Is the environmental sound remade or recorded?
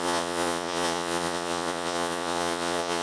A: remade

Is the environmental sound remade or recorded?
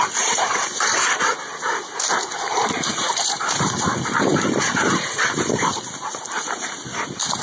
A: remade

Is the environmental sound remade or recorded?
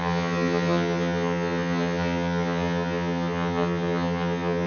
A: remade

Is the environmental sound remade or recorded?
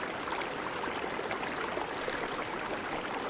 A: remade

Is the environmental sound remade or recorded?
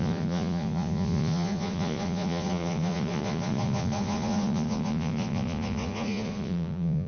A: remade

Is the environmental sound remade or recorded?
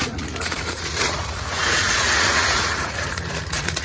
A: remade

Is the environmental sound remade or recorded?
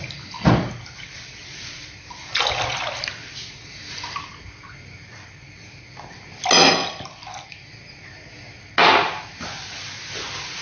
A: recorded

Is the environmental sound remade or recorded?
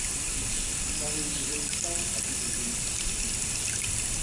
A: recorded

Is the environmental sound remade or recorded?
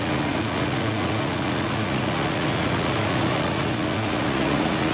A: remade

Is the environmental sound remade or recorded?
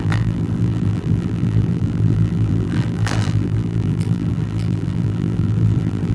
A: remade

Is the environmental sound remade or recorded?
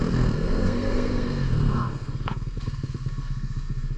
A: remade